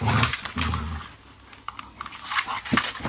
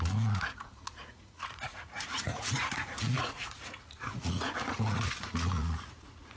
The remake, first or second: second